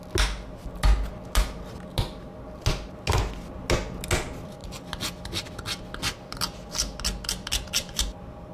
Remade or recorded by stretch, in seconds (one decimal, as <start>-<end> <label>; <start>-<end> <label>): 0.0-8.5 recorded

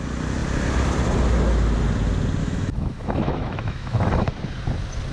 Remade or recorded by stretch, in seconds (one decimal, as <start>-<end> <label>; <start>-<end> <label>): 0.0-2.4 recorded; 2.4-4.3 remade; 4.3-5.1 recorded